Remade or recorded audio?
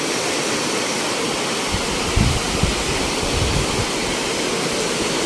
recorded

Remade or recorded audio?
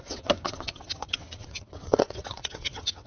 remade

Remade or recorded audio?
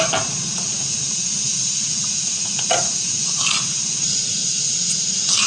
recorded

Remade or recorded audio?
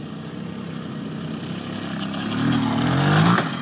recorded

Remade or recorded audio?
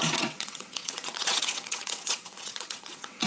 remade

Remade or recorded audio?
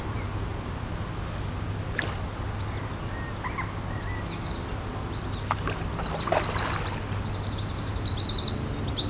recorded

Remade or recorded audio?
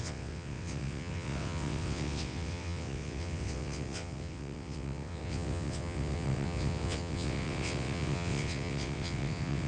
remade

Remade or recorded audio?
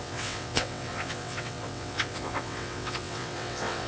remade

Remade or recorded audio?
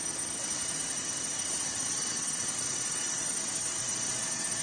remade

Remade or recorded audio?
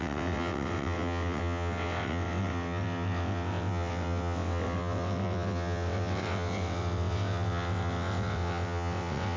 remade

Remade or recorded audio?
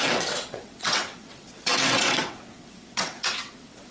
remade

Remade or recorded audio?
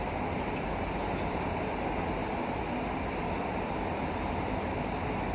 recorded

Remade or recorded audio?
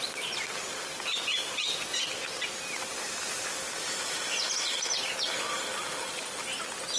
recorded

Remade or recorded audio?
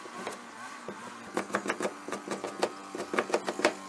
recorded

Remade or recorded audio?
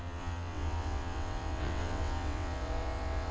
remade